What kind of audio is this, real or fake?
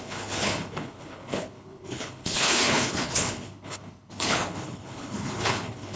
fake